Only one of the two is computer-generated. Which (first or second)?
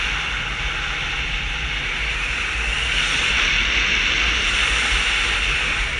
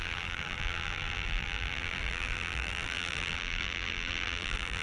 second